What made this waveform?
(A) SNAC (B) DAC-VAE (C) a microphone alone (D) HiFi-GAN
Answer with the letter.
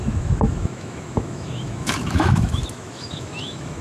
B